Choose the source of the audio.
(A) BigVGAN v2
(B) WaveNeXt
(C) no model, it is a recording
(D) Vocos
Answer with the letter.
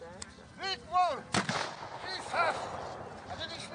C